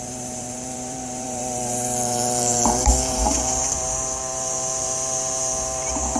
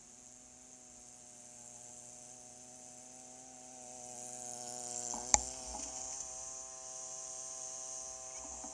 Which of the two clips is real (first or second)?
second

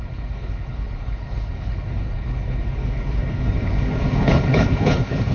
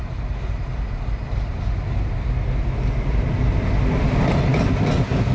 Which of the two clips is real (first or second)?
second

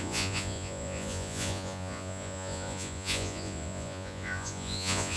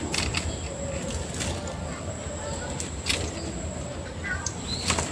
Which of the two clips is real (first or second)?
second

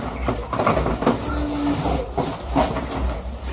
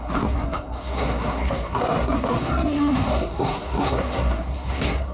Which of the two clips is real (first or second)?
first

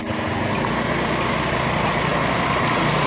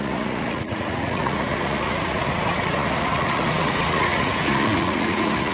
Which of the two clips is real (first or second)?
first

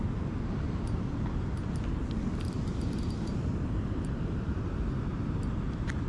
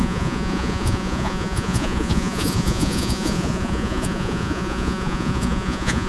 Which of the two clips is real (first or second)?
first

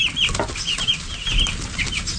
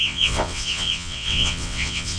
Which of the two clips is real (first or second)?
first